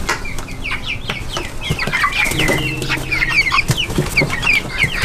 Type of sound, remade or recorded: recorded